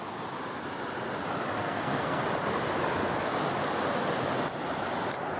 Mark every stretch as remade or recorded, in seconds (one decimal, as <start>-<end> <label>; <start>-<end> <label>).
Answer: 0.0-1.6 recorded; 1.6-2.2 remade; 2.2-5.4 recorded